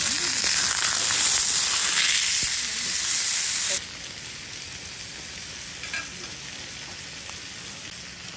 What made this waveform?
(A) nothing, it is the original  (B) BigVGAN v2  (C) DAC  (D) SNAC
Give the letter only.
A